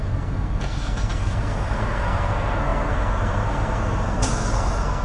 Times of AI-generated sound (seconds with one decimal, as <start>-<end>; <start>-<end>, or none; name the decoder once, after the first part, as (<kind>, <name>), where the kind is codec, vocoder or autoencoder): 0.0-5.0 (codec, SNAC)